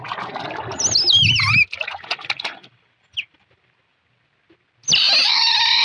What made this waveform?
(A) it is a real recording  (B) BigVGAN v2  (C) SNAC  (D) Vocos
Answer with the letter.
A